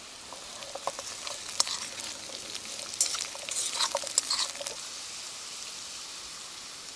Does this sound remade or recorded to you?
recorded